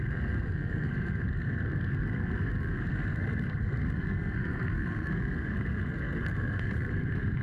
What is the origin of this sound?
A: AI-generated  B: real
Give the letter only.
A